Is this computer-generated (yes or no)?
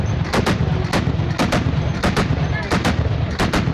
no